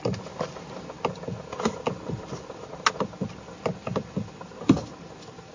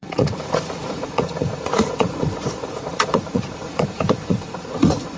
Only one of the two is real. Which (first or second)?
first